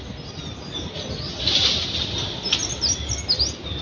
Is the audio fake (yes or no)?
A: no